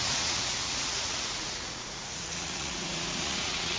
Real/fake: fake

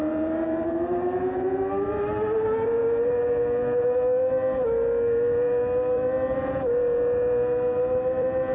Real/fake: fake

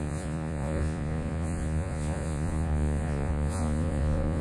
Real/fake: fake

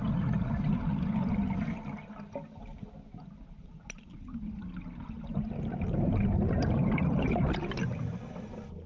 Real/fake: real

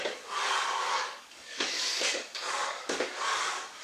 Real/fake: fake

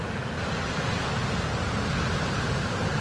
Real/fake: real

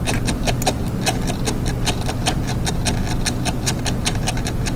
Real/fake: real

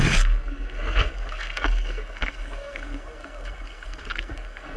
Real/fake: fake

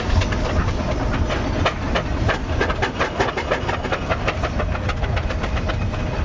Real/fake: real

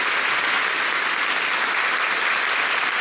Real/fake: real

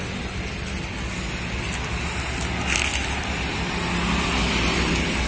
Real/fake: real